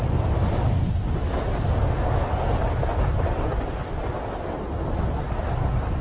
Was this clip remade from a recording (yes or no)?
no